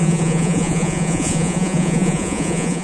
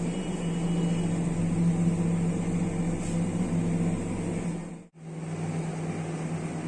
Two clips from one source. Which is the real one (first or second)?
second